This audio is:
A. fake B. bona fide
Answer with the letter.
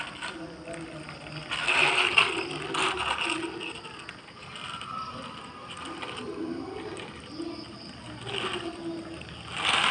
B